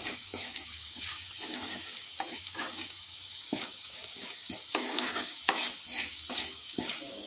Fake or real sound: fake